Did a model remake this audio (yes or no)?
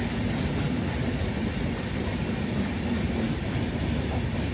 no